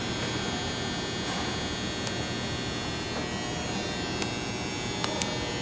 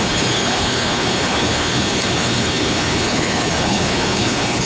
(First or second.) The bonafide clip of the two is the first